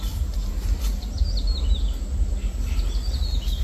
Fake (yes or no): no